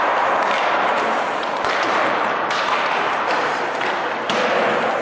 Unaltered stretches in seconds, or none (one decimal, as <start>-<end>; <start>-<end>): 0.0-0.9; 3.6-5.0